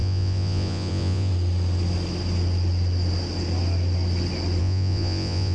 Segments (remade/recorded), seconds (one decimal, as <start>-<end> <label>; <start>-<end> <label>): 0.0-1.3 remade; 1.3-4.6 recorded; 4.6-5.5 remade